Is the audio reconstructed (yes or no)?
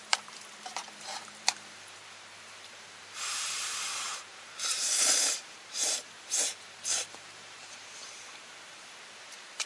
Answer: yes